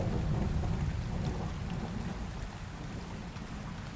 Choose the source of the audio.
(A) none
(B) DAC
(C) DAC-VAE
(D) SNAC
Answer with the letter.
A